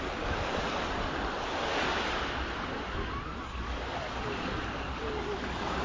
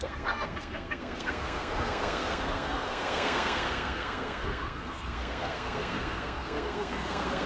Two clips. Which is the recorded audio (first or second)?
first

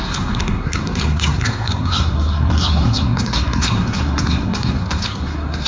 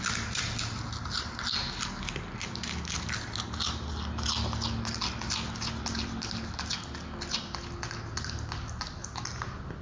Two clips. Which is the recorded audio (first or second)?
second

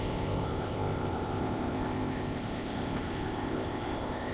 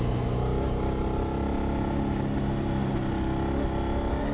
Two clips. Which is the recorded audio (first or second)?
second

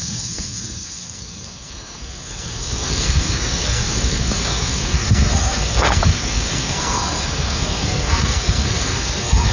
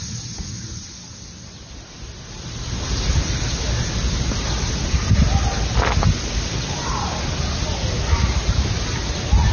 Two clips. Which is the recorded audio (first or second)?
second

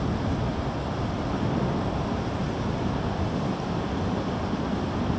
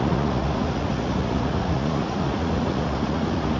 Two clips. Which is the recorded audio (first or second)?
first